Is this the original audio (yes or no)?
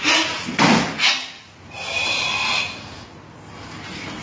yes